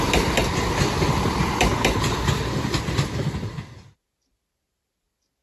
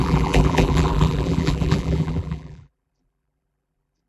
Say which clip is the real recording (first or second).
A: first